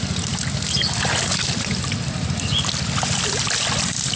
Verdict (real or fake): real